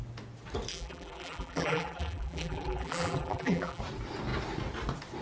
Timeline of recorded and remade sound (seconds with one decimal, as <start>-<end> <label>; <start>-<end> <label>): 0.0-0.7 recorded; 0.7-3.8 remade; 3.8-5.2 recorded